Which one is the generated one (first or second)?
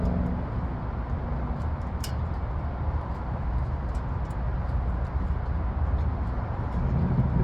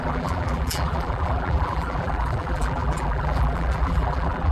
second